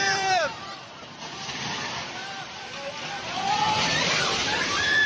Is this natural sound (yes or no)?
no